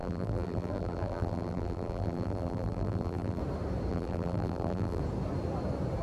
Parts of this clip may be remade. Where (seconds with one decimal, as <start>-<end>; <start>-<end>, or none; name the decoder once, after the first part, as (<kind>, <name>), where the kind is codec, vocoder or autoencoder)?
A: 0.0-3.4 (vocoder, BigVGAN v2); 3.9-5.0